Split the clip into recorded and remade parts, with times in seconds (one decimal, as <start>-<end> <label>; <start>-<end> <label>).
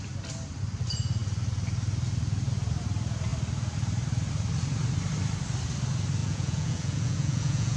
0.0-6.2 recorded; 6.2-7.8 remade